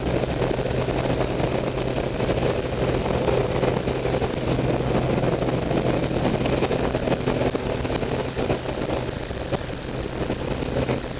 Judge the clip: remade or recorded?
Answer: recorded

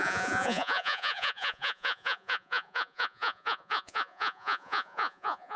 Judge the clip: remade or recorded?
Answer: remade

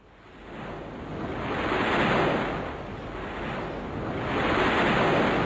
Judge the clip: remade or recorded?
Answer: recorded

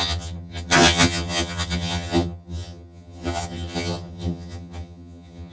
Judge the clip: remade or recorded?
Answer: remade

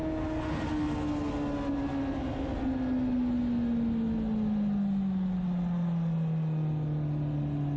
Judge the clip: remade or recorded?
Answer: recorded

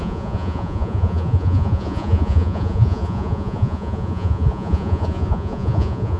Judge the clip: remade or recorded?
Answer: remade